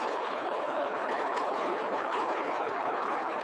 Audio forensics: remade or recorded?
remade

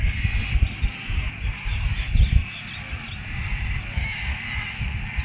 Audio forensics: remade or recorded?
recorded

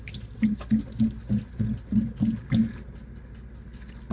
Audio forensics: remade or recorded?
recorded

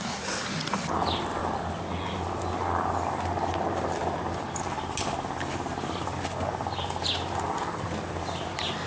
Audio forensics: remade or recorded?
recorded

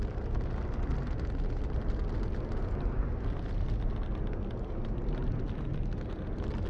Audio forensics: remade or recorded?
recorded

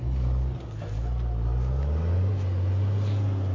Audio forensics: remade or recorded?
recorded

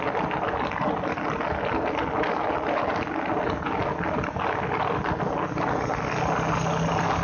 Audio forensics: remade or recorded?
recorded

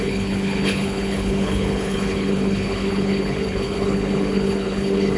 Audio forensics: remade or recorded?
remade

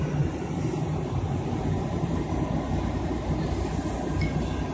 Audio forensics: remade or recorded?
recorded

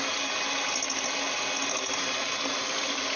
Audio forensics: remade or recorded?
recorded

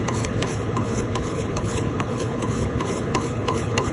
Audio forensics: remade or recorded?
remade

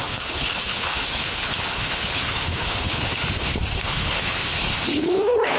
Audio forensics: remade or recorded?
remade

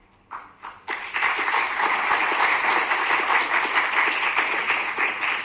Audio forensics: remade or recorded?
recorded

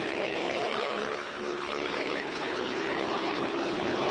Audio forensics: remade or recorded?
remade